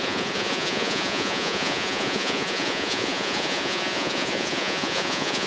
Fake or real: fake